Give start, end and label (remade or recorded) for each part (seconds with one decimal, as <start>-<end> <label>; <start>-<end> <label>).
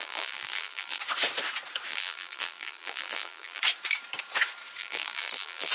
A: 0.0-1.0 remade; 1.0-1.9 recorded; 1.9-3.6 remade; 3.6-4.8 recorded; 4.8-5.7 remade